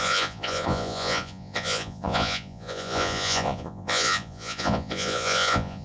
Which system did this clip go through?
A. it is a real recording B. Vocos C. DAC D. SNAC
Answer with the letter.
B